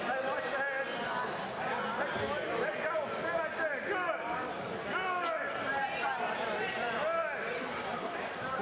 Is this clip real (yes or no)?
yes